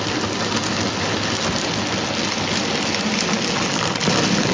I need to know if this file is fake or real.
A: real